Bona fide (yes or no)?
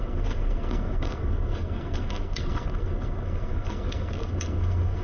no